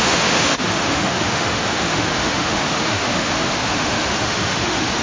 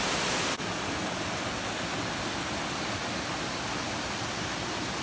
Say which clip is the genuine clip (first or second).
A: second